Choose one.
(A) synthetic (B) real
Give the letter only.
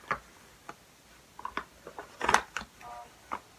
B